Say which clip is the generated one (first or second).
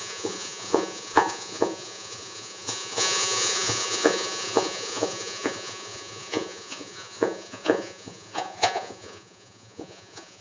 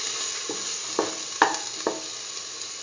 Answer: first